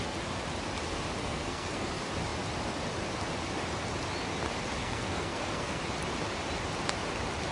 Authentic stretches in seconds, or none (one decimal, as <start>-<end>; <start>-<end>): 0.0-1.2; 1.9-4.8; 5.8-7.5